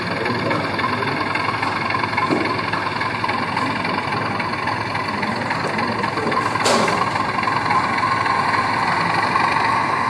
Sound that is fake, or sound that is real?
real